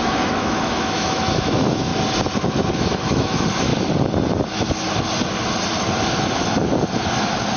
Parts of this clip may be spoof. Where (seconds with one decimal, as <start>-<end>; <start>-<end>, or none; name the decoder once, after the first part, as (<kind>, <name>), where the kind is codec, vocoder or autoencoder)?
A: 0.0-1.9 (autoencoder, DAC-VAE); 2.7-3.7